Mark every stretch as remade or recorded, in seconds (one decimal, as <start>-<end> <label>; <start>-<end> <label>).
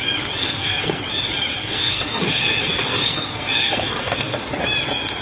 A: 0.0-0.4 recorded; 0.4-1.0 remade; 1.0-1.5 recorded; 1.5-4.4 remade; 4.4-5.2 recorded